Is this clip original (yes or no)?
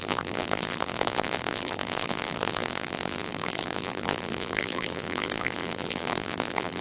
no